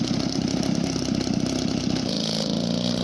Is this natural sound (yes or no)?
yes